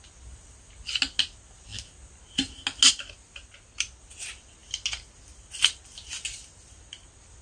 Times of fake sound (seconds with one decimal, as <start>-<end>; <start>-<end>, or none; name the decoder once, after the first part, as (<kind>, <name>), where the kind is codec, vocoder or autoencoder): none